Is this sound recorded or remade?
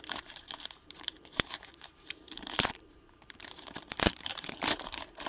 remade